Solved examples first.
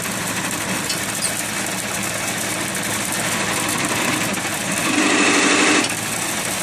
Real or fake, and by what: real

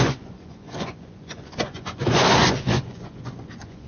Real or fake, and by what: fake, vocoder, Vocos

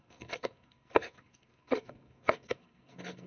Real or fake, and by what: fake, codec, SNAC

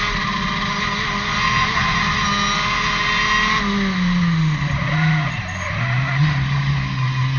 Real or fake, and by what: real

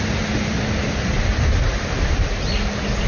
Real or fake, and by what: real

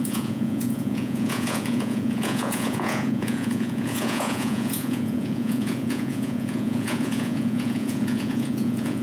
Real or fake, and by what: fake, vocoder, Vocos